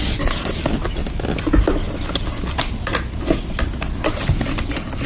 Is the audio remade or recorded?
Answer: recorded